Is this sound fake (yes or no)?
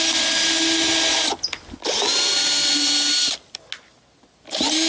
no